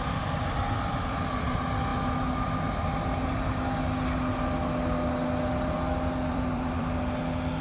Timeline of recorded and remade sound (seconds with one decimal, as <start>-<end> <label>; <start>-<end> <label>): 0.0-1.9 remade; 1.9-6.3 recorded; 6.3-7.6 remade